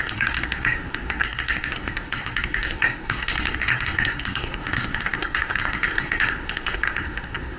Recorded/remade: remade